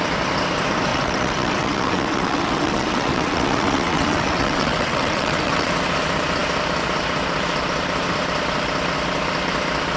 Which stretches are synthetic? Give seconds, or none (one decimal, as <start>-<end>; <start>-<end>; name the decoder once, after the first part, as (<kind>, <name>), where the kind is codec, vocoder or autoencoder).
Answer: 0.9-5.7 (vocoder, WaveNeXt)